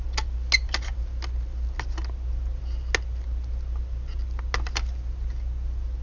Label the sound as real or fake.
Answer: real